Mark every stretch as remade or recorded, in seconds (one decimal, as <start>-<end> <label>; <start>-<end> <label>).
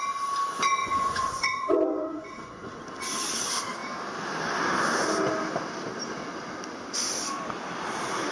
0.0-0.8 recorded; 0.8-2.7 remade; 2.7-8.3 recorded